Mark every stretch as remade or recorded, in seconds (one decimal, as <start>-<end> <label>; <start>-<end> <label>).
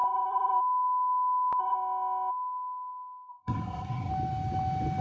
0.0-0.6 remade; 0.6-1.6 recorded; 1.6-2.3 remade; 2.3-3.3 recorded; 3.3-4.1 remade; 4.1-5.0 recorded